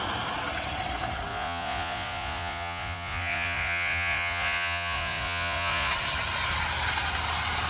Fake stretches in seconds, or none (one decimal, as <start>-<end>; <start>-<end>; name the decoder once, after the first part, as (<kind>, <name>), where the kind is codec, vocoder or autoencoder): 1.3-5.9 (vocoder, Vocos)

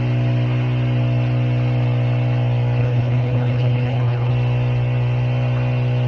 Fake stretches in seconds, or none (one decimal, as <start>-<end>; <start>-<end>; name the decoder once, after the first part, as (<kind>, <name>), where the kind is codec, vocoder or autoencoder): 2.8-4.3 (codec, HILCodec)

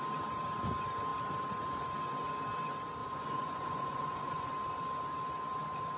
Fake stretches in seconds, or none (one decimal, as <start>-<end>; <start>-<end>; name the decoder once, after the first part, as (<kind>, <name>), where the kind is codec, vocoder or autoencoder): 3.0-4.5 (vocoder, Vocos)